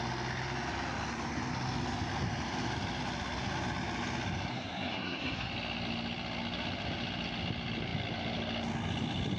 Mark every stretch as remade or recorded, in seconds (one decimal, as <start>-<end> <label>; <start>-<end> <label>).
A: 0.0-4.5 recorded; 4.5-5.5 remade; 5.5-9.4 recorded